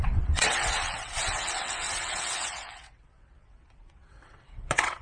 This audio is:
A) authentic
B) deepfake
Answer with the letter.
B